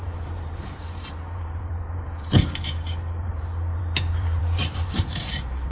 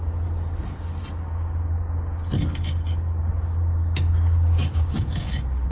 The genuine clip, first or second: second